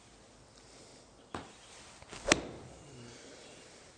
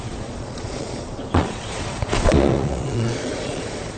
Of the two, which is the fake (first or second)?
second